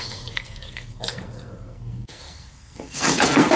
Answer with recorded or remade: remade